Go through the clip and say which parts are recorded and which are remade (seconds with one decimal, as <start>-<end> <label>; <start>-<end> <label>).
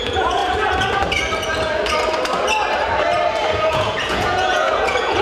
0.0-0.4 remade; 0.4-3.5 recorded; 3.5-5.2 remade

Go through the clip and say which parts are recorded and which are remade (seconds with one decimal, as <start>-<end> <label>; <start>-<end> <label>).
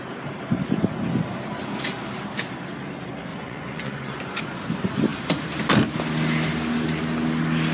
0.0-3.3 recorded; 3.3-4.4 remade; 4.4-7.7 recorded